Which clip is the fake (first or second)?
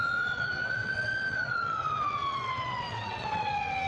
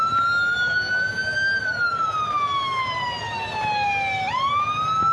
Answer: first